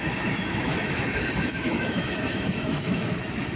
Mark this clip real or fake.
fake